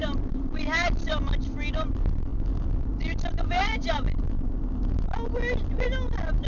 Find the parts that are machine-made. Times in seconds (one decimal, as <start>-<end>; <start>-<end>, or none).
0.0-0.6